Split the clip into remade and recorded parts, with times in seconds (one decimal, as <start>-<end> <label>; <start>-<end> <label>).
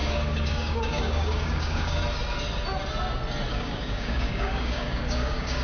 0.0-2.0 remade; 2.0-3.5 recorded; 3.5-5.6 remade